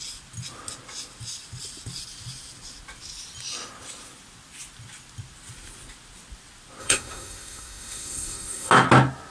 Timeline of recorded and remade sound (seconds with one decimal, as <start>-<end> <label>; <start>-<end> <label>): 0.0-6.8 recorded; 6.8-8.7 remade; 8.7-9.3 recorded